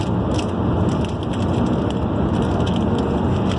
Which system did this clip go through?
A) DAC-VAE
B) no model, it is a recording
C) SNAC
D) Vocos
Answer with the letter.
B